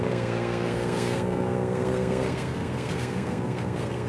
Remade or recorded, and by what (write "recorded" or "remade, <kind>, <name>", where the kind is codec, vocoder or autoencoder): remade, codec, SNAC